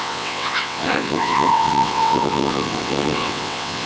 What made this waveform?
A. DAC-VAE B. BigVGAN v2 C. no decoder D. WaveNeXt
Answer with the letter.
D